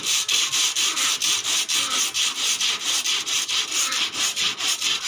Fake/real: real